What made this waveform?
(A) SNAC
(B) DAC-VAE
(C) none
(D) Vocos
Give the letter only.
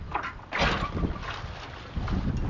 C